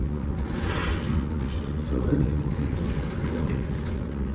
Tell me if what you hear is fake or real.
fake